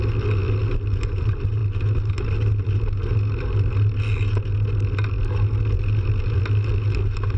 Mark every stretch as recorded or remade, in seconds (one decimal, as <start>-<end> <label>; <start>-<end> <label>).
0.0-7.4 recorded